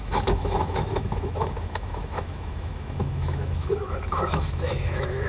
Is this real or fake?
fake